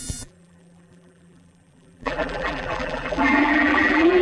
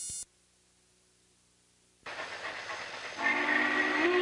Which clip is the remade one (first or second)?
first